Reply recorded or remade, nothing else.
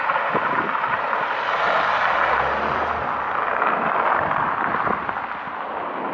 recorded